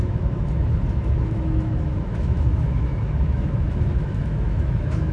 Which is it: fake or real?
fake